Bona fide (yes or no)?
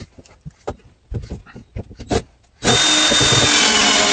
yes